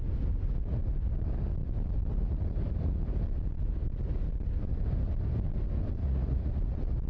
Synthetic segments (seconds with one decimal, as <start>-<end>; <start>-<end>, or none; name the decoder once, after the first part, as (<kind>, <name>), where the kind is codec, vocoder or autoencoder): 6.0-6.5 (vocoder, Vocos)